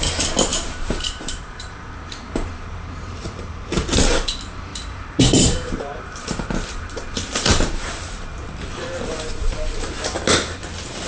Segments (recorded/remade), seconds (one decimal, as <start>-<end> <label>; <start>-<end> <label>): 0.0-0.5 recorded; 0.5-3.5 remade; 3.5-4.7 recorded; 4.7-8.4 remade; 8.4-11.1 recorded